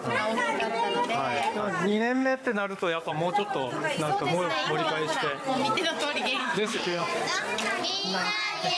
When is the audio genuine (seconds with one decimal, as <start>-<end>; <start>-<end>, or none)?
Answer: 0.0-1.9; 3.1-6.4; 7.0-8.8